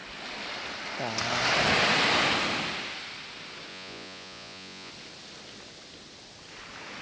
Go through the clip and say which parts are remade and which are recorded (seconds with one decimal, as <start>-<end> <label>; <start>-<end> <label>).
0.0-3.7 recorded; 3.7-4.9 remade; 4.9-7.0 recorded